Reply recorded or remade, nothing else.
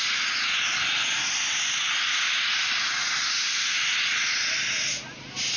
recorded